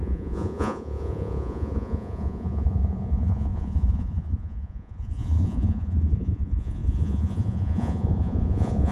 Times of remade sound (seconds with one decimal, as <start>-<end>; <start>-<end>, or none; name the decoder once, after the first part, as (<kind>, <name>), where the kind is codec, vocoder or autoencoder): 0.0-8.9 (vocoder, Vocos)